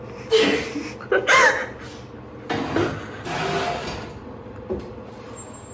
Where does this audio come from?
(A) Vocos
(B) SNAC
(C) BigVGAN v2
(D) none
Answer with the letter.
D